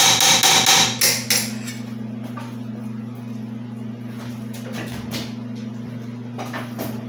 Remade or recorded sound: recorded